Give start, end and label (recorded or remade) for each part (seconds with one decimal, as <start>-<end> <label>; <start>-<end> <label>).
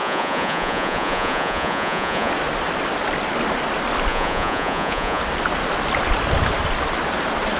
0.0-2.3 remade; 2.3-4.1 recorded; 4.1-5.2 remade; 5.2-7.6 recorded